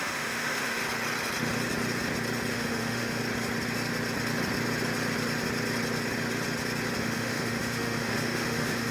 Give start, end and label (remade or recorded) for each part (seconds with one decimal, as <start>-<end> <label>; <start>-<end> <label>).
0.0-0.8 remade; 0.8-2.5 recorded; 2.5-3.2 remade; 3.2-7.0 recorded; 7.0-8.9 remade

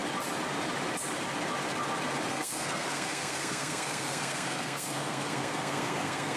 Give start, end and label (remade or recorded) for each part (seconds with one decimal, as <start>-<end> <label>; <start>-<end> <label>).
0.0-2.3 recorded; 2.3-6.4 remade

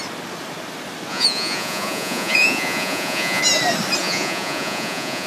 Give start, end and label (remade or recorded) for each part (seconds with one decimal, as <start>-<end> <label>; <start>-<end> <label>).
0.0-1.1 recorded; 1.1-3.4 remade; 3.4-4.0 recorded; 4.0-5.3 remade

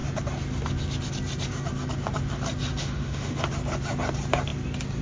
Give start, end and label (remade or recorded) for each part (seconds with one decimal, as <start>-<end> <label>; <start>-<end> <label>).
0.0-2.8 recorded; 2.8-3.4 remade; 3.4-5.0 recorded

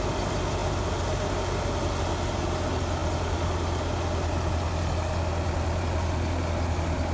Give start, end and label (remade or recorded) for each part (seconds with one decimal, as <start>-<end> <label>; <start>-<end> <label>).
0.0-7.1 recorded

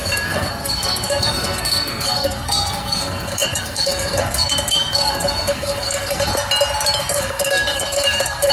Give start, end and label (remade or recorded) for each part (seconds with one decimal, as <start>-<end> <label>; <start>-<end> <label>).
0.0-6.3 remade; 6.3-7.0 recorded; 7.0-8.5 remade

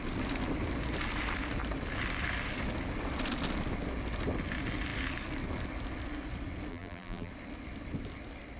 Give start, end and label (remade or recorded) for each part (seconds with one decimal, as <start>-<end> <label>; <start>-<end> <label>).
0.0-6.7 recorded; 6.7-7.3 remade; 7.3-8.6 recorded